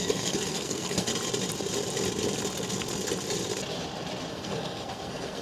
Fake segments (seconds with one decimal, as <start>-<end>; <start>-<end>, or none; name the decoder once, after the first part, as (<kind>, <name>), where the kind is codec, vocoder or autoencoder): 0.0-1.1 (codec, SNAC); 4.3-5.4